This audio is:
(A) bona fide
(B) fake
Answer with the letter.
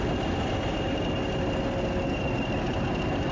A